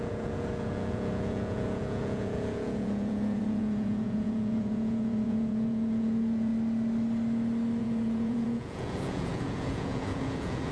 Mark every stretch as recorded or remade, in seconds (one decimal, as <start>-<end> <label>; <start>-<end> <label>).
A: 0.0-6.5 remade; 6.5-7.8 recorded; 7.8-10.7 remade